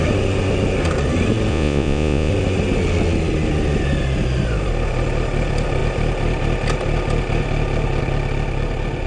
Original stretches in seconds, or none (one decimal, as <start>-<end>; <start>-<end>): 0.0-1.5; 2.3-9.1